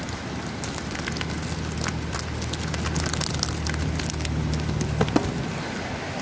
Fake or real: real